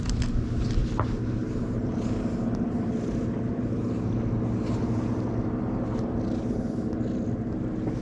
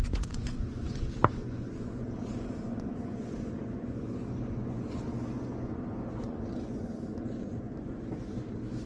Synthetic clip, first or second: second